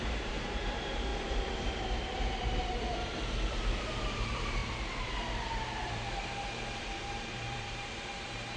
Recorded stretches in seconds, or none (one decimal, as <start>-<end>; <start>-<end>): 1.1-1.7